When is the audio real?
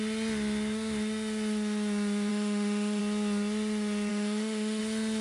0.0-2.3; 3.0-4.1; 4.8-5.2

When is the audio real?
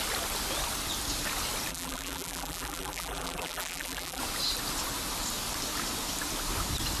0.0-1.7; 4.2-7.0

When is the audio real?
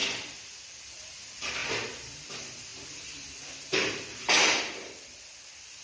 0.0-5.8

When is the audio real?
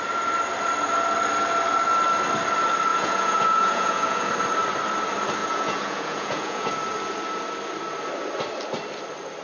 0.0-2.9; 4.3-5.4; 6.7-9.4